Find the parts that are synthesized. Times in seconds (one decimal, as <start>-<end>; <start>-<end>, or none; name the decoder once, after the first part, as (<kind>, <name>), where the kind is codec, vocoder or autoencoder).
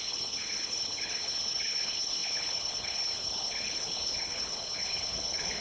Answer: 0.0-5.6 (codec, HILCodec)